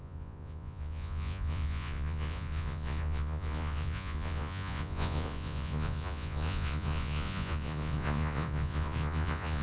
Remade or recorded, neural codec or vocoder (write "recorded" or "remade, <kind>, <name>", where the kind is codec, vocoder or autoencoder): remade, vocoder, Vocos